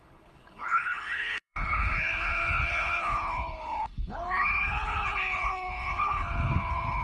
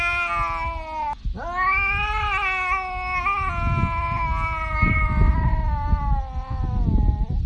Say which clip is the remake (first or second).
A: first